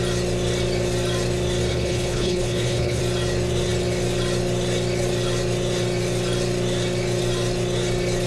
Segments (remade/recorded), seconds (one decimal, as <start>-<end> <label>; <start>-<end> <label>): 0.0-1.7 recorded; 1.7-3.0 remade; 3.0-8.3 recorded